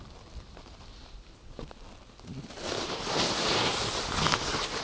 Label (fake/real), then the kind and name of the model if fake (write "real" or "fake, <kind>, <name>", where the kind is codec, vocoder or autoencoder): real